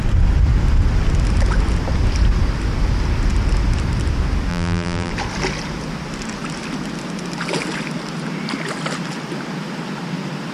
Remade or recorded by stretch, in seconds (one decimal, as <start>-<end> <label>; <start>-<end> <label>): 0.0-4.5 recorded; 4.5-5.1 remade; 5.1-10.5 recorded